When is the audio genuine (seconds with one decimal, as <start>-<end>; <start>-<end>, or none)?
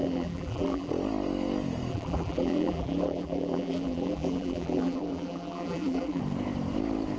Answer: 0.9-1.9; 6.2-7.2